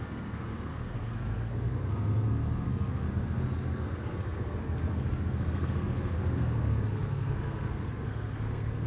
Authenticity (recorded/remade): remade